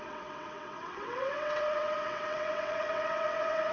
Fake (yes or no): yes